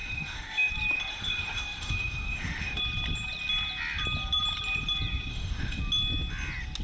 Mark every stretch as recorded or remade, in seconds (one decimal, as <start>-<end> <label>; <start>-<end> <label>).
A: 0.0-0.7 remade; 0.7-1.1 recorded; 1.1-2.8 remade; 2.8-5.3 recorded; 5.3-5.8 remade; 5.8-6.8 recorded